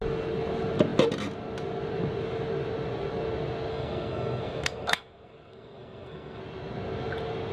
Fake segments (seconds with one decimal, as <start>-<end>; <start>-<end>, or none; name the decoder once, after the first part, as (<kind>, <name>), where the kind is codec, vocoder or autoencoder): 3.7-6.4 (codec, SNAC)